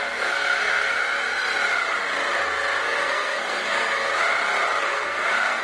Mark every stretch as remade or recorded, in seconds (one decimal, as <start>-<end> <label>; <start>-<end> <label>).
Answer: 0.0-1.0 remade; 1.0-2.8 recorded; 2.8-4.1 remade; 4.1-4.8 recorded; 4.8-5.6 remade